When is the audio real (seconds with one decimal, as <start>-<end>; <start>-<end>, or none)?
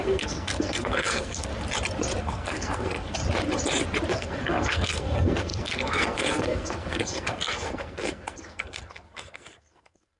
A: 1.5-2.2; 3.2-4.1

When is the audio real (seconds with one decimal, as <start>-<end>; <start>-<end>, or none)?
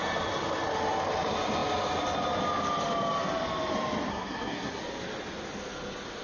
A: 0.0-4.1; 4.8-6.2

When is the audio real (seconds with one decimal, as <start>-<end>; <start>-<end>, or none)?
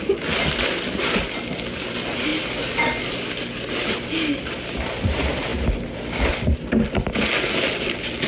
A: 0.0-8.3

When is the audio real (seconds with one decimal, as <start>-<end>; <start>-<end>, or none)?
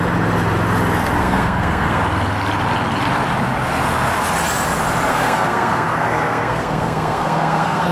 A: 0.0-1.2; 2.0-5.1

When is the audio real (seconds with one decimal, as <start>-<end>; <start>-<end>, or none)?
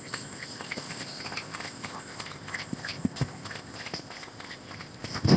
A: none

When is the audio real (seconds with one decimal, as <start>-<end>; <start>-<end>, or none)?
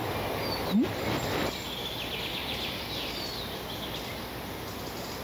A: 0.0-2.4; 3.1-5.2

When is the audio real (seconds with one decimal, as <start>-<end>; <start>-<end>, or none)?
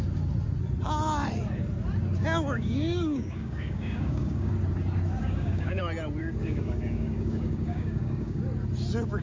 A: 0.0-2.2; 4.5-5.2; 5.8-6.2; 8.4-9.2